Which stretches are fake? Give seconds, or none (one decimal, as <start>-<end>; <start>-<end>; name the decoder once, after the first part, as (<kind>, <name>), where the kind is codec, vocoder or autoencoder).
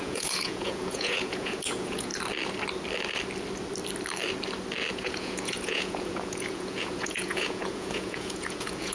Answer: 0.0-2.1 (vocoder, Vocos); 4.9-8.9